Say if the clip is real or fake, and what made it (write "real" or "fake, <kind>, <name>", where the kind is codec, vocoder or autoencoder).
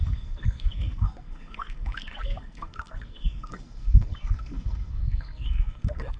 fake, codec, SNAC